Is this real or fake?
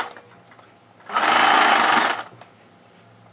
real